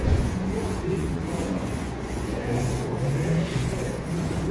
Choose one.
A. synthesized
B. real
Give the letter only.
A